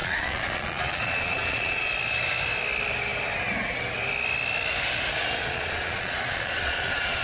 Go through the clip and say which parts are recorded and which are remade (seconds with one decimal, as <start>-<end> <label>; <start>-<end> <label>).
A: 0.0-1.9 remade; 1.9-5.4 recorded; 5.4-7.2 remade